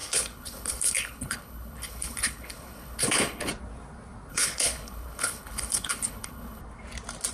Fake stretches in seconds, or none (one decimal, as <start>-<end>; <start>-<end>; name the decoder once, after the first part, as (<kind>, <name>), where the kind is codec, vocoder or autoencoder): 0.0-3.5 (codec, HILCodec); 4.3-6.6